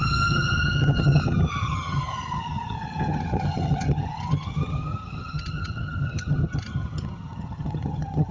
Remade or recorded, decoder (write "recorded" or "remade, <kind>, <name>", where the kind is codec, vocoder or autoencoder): remade, vocoder, HiFi-GAN